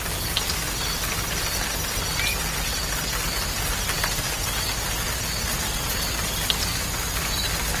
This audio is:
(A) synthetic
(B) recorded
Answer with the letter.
B